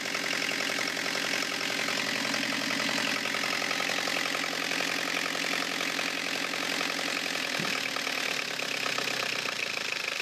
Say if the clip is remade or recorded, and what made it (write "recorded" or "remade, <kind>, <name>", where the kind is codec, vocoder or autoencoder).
recorded